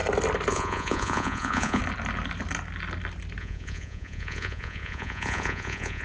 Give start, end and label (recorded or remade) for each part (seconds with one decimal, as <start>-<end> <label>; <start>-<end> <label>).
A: 0.0-0.5 recorded; 0.5-1.8 remade; 1.8-3.4 recorded; 3.4-6.0 remade